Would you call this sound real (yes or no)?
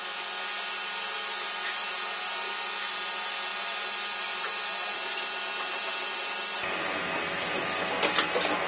yes